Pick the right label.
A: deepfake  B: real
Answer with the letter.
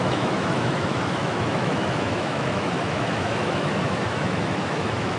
A